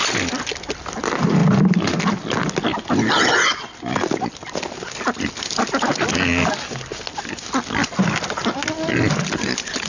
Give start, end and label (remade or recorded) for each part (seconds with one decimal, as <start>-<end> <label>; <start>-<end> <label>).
0.0-9.9 recorded